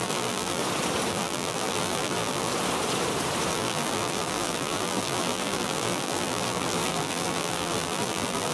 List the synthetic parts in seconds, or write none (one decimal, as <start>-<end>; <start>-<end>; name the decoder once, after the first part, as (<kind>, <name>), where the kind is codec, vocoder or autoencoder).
0.0-0.6 (vocoder, BigVGAN v2); 1.1-2.5; 3.5-8.5